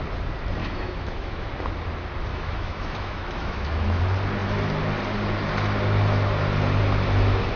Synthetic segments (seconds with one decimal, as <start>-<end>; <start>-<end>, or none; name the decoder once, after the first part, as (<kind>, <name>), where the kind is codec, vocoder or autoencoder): 0.6-1.5 (autoencoder, DAC-VAE); 2.3-4.0